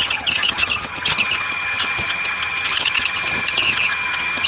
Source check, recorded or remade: remade